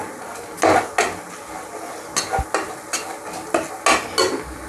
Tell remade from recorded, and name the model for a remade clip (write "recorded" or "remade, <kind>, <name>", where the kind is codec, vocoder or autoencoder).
recorded